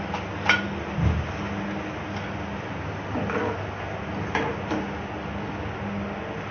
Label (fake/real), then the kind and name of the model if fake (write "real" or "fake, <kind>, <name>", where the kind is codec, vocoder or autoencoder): real